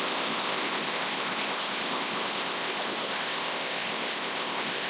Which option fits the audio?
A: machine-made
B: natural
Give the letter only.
A